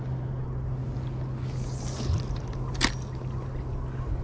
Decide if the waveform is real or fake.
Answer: real